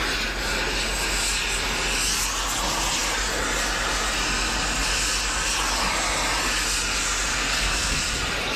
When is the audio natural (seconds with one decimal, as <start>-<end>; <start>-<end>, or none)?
0.0-7.3; 8.0-8.6